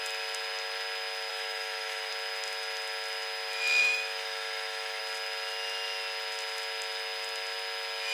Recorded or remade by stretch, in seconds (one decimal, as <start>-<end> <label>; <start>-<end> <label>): 0.0-1.3 recorded; 1.3-2.1 remade; 2.1-3.8 recorded; 3.8-5.0 remade; 5.0-8.1 recorded